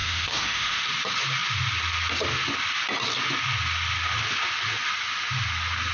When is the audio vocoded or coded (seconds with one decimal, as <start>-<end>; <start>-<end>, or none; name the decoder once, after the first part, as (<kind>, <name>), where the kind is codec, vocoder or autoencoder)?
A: 0.0-0.8 (autoencoder, DAC-VAE)